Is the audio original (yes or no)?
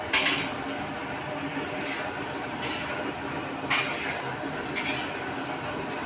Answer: yes